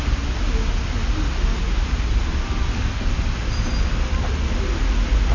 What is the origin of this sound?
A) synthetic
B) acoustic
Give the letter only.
B